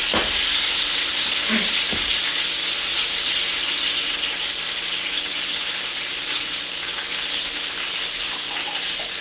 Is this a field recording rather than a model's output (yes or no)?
yes